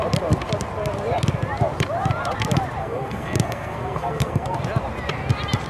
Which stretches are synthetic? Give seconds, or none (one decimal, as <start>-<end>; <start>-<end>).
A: 2.8-4.6